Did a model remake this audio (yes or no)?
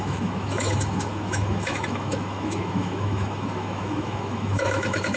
yes